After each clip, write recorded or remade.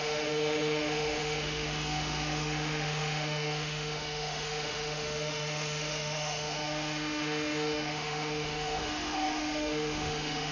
remade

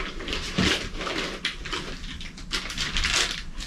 recorded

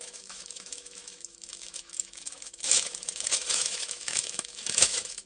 remade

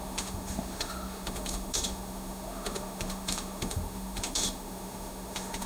remade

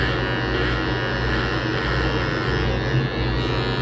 recorded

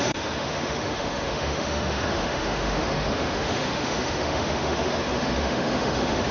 remade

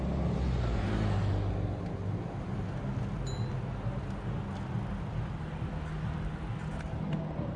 recorded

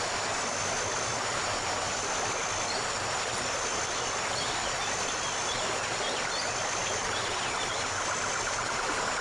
recorded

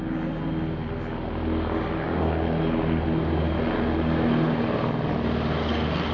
recorded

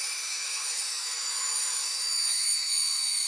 remade